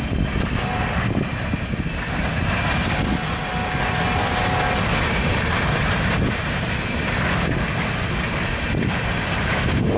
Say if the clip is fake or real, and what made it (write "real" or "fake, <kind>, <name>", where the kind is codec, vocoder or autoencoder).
real